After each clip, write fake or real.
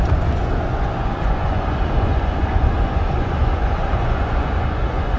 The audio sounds fake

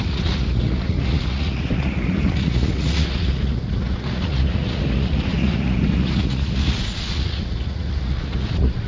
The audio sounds fake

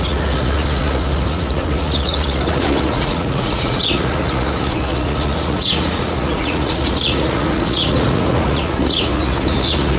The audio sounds fake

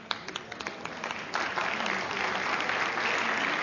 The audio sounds real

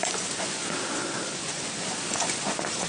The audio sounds fake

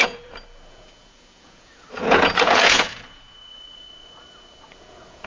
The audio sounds fake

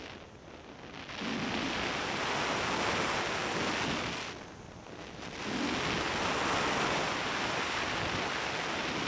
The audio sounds real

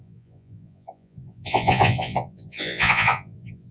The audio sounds fake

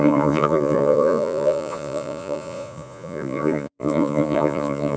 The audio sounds fake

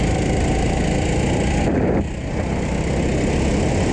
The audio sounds real